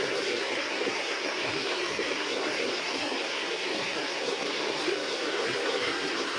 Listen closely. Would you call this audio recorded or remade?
remade